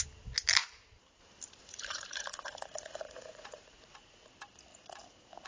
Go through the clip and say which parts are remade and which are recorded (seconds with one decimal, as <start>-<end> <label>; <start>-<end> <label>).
0.0-1.6 recorded; 1.6-4.2 remade; 4.2-4.7 recorded; 4.7-5.5 remade